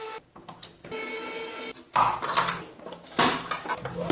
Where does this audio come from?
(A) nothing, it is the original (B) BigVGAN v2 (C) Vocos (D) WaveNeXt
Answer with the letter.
A